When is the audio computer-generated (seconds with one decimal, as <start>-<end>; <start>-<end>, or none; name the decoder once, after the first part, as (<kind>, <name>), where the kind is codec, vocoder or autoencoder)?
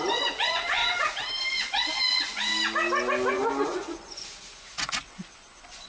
0.0-0.8 (vocoder, Vocos); 1.5-2.5; 3.3-5.9